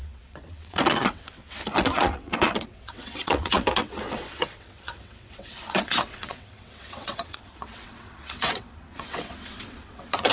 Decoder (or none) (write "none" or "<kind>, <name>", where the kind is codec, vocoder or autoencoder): vocoder, WaveNeXt